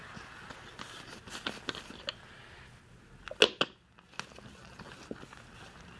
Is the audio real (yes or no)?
yes